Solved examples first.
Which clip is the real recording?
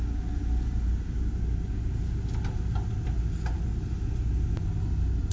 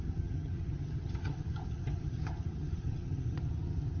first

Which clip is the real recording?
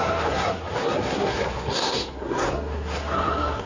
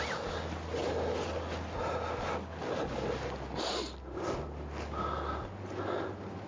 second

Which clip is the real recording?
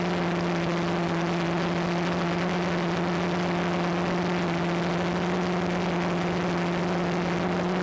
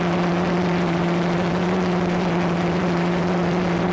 first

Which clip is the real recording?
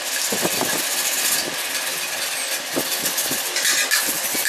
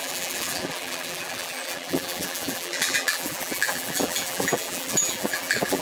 first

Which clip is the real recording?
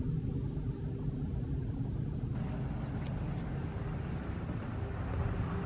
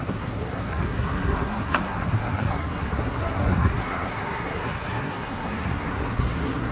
first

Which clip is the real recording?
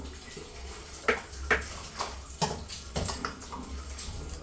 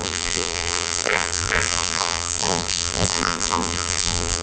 first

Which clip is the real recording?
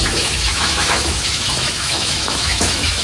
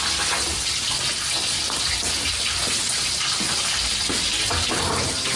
second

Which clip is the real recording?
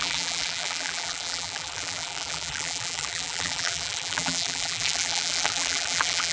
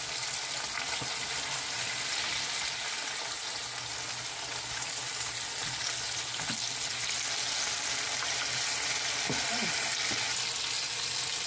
second